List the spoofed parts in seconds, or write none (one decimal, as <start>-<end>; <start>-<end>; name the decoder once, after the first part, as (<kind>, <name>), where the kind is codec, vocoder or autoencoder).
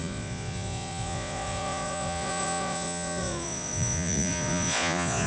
0.0-5.3 (vocoder, Vocos)